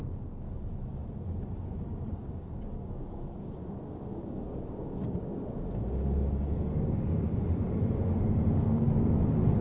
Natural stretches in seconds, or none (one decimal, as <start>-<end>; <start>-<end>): none